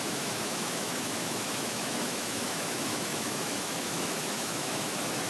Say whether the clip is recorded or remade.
remade